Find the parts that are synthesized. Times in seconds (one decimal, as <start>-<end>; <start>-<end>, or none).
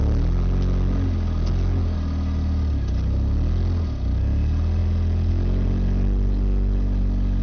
none